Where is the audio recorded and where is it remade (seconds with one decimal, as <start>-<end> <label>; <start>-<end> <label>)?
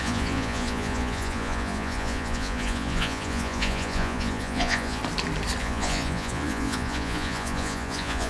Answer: 0.0-5.0 remade; 5.0-5.6 recorded; 5.6-8.3 remade